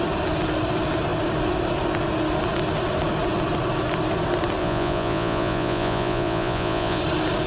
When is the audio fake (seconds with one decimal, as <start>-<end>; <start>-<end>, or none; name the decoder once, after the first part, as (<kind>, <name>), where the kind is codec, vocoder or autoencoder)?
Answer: 4.6-7.0 (vocoder, Vocos)